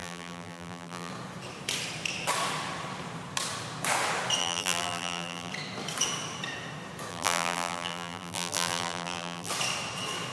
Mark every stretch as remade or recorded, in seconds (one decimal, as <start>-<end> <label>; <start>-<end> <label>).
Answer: 0.0-1.1 remade; 1.1-4.4 recorded; 4.4-5.5 remade; 5.5-7.1 recorded; 7.1-9.5 remade; 9.5-10.3 recorded